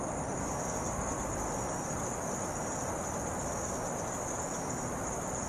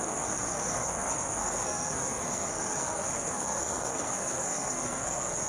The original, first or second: first